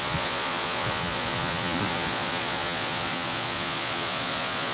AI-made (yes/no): yes